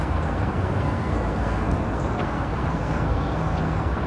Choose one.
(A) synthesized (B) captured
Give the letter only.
A